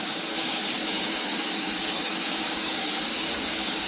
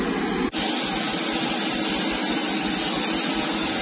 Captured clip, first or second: second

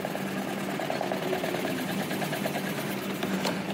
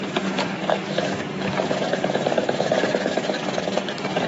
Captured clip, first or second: first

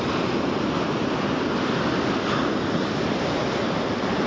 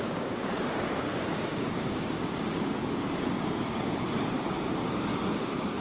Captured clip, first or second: first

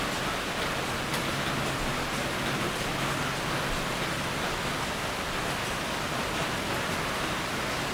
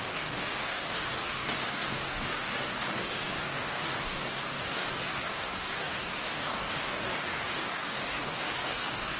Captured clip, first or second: first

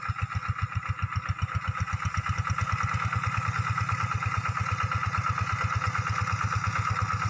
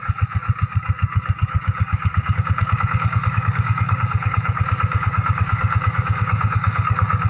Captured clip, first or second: first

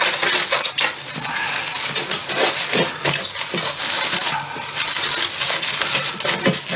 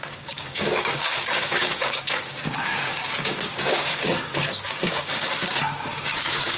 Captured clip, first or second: first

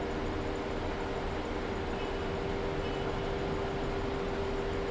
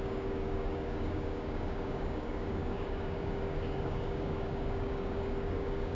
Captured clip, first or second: first